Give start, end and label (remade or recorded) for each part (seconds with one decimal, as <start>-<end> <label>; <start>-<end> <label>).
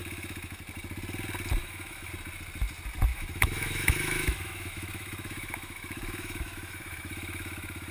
0.0-0.6 remade; 0.6-1.6 recorded; 1.6-2.1 remade; 2.1-3.1 recorded; 3.1-7.9 remade